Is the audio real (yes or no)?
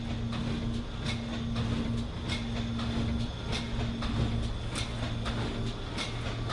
yes